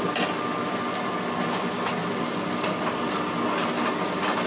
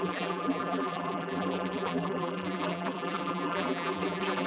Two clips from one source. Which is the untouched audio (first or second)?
first